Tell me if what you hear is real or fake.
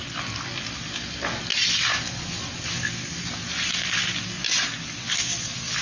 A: real